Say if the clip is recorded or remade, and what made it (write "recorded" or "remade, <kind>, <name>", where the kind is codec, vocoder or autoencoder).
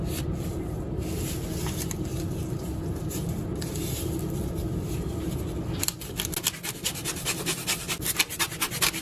recorded